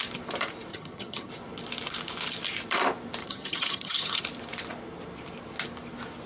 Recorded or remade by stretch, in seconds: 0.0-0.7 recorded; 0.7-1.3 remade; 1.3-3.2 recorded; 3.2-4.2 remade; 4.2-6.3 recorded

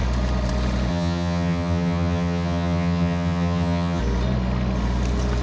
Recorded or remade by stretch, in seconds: 0.0-0.9 recorded; 0.9-4.0 remade; 4.0-5.4 recorded

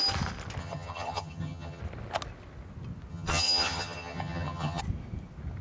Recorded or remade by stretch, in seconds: 0.0-0.6 recorded; 0.6-1.8 remade; 1.8-3.1 recorded; 3.1-4.8 remade; 4.8-5.6 recorded

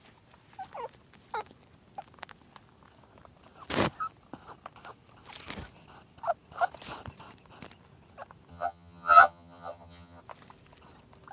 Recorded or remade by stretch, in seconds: 0.0-8.5 recorded; 8.5-10.2 remade; 10.2-11.3 recorded

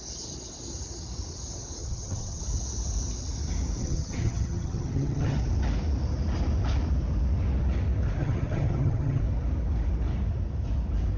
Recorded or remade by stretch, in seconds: 0.0-1.8 recorded; 1.8-2.4 remade; 2.4-3.8 recorded; 3.8-5.4 remade; 5.4-8.2 recorded; 8.2-9.2 remade; 9.2-11.2 recorded

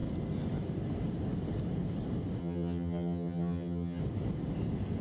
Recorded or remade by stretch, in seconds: 0.0-2.4 recorded; 2.4-4.0 remade; 4.0-5.0 recorded